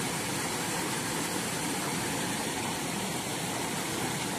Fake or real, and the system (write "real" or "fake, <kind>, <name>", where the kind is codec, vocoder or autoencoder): real